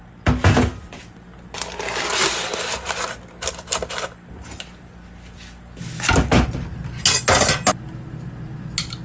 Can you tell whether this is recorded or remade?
recorded